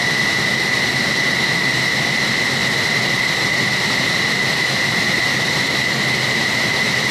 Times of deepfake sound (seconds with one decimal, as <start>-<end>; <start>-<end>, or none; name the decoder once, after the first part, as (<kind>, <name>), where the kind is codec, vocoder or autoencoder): none